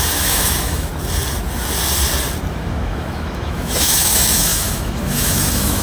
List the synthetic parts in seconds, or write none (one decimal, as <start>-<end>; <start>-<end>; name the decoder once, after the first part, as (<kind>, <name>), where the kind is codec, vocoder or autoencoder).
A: 0.0-0.9 (autoencoder, DAC-VAE); 2.5-5.8

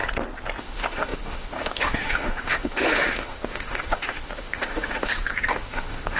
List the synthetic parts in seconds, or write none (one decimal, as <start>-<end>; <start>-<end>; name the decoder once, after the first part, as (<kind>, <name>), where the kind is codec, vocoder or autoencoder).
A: 0.6-6.2 (autoencoder, DAC-VAE)

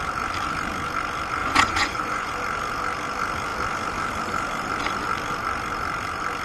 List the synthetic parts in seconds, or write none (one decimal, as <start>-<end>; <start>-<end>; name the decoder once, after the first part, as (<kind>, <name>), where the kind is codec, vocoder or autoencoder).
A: 1.4-2.3 (vocoder, Vocos)

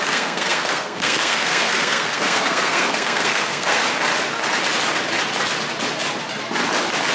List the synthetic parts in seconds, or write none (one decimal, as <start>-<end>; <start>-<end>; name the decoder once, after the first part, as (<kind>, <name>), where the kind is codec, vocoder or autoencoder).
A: 0.0-3.8 (codec, SNAC)

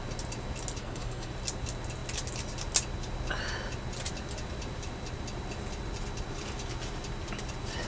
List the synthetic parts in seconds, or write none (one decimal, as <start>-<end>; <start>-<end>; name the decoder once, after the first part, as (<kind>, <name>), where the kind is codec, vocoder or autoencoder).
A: 0.8-1.3 (codec, SNAC)

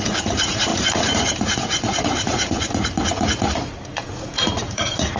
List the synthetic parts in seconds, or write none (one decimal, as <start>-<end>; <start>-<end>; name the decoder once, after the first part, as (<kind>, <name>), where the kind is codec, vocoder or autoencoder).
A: 0.0-5.2 (vocoder, Vocos)

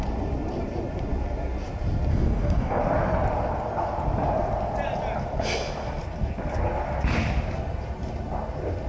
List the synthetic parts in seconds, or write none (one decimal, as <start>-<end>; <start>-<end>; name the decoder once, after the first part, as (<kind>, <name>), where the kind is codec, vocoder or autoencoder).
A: 2.1-2.8 (codec, DAC)